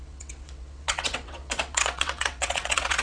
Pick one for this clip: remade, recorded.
remade